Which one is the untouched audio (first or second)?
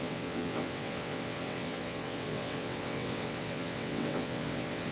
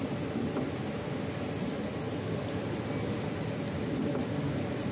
second